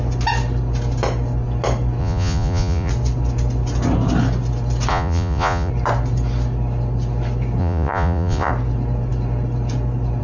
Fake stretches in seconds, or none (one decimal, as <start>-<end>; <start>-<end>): 2.0-2.9; 4.9-5.7; 7.6-8.5